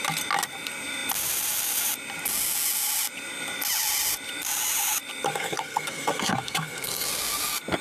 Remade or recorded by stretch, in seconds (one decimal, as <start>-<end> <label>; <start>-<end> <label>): 0.0-5.3 recorded; 5.3-7.1 remade; 7.1-7.8 recorded